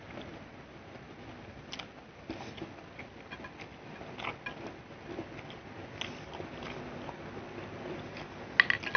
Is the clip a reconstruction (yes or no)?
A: no